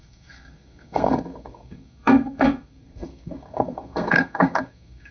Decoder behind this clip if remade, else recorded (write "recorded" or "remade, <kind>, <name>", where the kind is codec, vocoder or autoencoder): remade, codec, SNAC